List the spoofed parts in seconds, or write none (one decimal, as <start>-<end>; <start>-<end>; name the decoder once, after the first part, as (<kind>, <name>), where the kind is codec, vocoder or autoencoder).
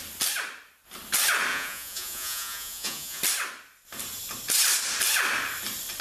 1.5-3.2 (vocoder, Vocos)